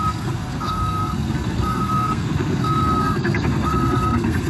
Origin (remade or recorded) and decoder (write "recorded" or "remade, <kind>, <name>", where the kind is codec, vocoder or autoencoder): remade, codec, SNAC